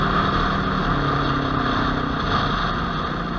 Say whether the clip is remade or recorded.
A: recorded